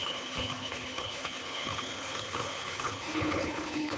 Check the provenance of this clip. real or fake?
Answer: fake